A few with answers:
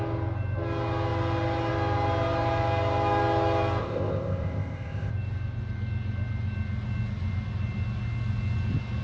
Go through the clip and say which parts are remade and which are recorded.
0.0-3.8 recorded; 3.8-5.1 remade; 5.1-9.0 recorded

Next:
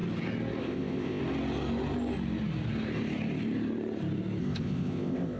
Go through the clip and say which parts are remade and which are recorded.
0.0-0.6 recorded; 0.6-1.2 remade; 1.2-4.4 recorded; 4.4-5.4 remade